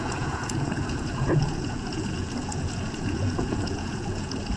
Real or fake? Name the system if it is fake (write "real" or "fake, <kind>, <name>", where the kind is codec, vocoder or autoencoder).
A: fake, vocoder, Vocos